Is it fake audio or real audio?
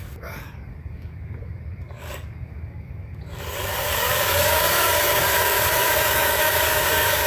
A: fake